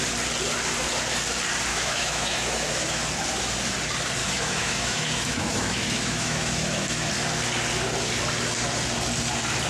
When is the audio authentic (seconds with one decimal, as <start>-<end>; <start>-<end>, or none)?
0.0-1.7; 3.0-4.2; 7.1-9.7